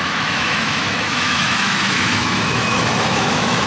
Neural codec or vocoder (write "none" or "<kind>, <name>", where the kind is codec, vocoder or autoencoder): autoencoder, DAC-VAE